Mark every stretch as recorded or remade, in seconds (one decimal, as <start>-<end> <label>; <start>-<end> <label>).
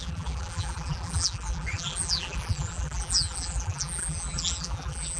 0.0-5.2 remade